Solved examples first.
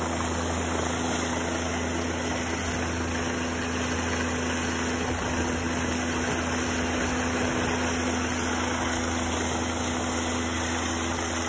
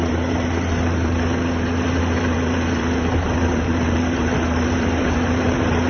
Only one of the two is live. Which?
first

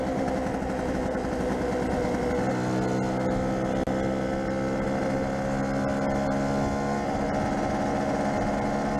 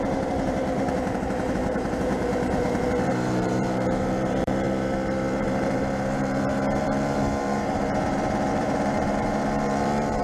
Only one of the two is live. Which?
first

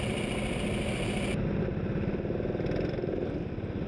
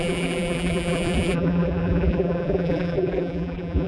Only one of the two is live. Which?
first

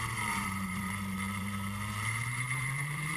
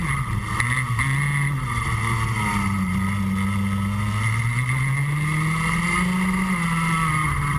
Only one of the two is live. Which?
second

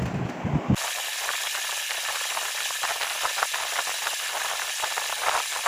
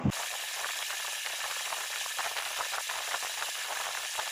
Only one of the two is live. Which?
first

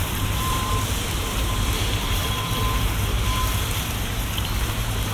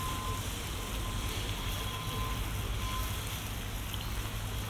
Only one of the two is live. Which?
second